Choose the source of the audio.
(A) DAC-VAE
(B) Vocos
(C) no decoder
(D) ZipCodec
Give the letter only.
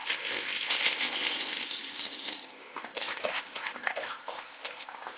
D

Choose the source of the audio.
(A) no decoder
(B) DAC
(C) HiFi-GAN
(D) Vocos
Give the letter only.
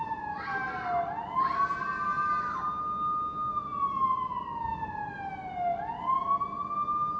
A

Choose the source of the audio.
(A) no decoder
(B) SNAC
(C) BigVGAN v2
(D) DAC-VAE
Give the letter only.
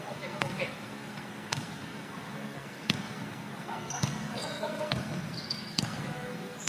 B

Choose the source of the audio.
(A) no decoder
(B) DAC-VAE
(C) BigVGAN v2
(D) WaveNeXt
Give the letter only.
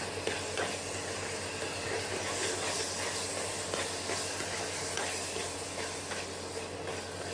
A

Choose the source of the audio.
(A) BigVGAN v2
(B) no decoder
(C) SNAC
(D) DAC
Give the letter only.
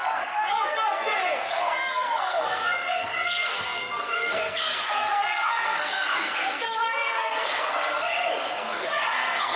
C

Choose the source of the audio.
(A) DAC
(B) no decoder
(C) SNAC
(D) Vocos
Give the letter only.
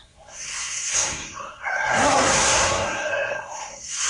C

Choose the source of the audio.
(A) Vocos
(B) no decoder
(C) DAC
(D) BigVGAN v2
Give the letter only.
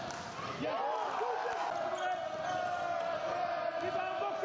B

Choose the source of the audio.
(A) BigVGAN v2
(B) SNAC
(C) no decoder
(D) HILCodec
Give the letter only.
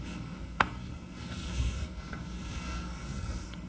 B